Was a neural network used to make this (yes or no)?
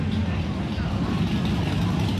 no